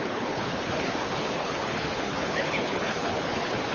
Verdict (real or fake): fake